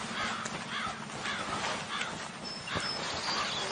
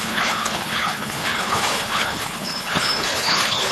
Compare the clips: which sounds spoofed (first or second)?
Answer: second